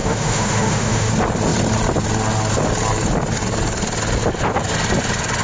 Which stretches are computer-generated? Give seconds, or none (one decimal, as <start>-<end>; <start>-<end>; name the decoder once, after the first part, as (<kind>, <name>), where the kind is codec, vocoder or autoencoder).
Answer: 0.0-1.1 (autoencoder, DAC-VAE)